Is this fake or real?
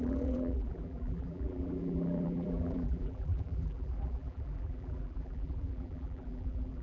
fake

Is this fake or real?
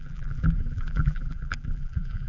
fake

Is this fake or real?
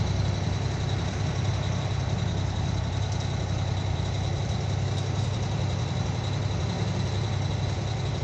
fake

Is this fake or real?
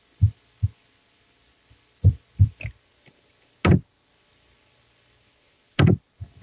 real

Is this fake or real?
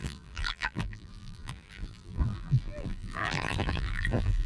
fake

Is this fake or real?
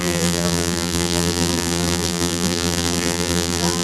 fake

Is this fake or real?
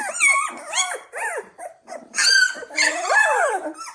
fake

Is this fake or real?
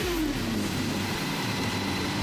fake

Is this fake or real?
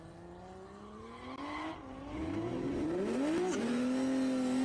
real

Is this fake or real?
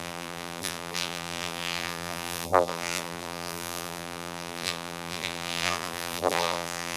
fake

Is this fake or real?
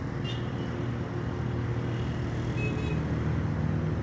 real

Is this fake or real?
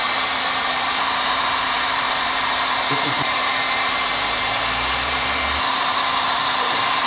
fake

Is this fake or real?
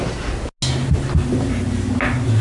real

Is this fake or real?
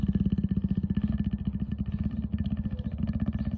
real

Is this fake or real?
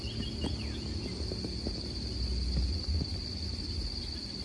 real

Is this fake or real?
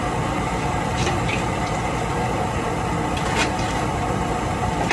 fake